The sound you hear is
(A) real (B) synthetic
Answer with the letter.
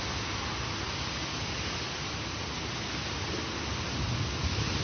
A